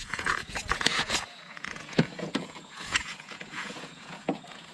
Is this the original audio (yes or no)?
no